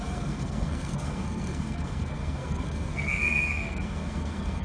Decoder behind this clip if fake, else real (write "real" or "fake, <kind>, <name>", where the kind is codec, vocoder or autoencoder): fake, codec, SNAC